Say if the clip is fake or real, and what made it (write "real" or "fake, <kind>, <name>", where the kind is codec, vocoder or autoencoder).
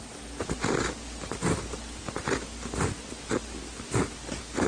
real